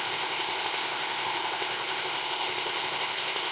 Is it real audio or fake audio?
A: fake